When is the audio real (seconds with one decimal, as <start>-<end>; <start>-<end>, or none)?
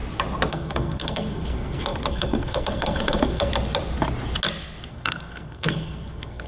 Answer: 0.0-0.5; 3.5-4.9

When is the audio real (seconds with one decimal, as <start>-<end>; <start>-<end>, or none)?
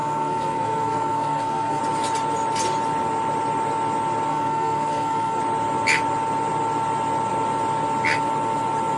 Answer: 1.8-4.3; 5.4-9.0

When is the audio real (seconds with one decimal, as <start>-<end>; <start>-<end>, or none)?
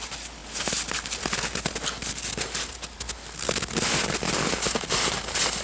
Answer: 0.0-5.6